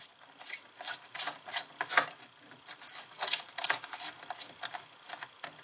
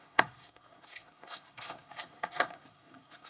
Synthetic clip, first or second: second